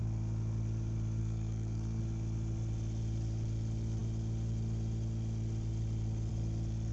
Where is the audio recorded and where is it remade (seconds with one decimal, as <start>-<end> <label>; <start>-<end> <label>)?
0.0-1.2 recorded; 1.2-2.0 remade; 2.0-6.9 recorded